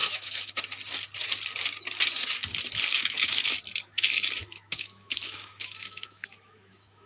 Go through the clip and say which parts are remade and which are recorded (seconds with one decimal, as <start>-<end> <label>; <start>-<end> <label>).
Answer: 0.0-0.6 remade; 0.6-2.9 recorded; 2.9-3.6 remade; 3.6-4.4 recorded; 4.4-7.1 remade

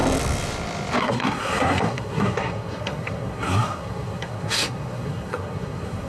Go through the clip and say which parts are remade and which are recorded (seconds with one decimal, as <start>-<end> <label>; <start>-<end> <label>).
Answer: 0.0-1.0 recorded; 1.0-6.1 remade

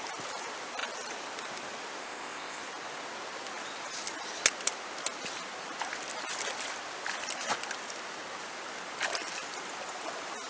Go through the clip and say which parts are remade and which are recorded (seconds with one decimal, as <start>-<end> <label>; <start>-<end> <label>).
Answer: 0.0-2.0 recorded; 2.0-2.6 remade; 2.6-10.5 recorded

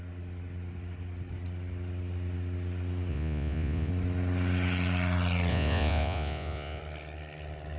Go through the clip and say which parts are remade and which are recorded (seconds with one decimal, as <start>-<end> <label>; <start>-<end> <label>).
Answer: 0.0-3.1 recorded; 3.1-3.9 remade; 3.9-5.5 recorded; 5.5-6.8 remade; 6.8-7.8 recorded